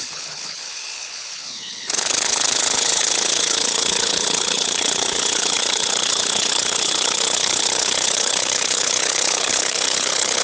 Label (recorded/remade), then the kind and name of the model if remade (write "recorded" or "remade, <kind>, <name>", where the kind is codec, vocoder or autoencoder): remade, codec, HILCodec